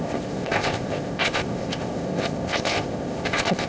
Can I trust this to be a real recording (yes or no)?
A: no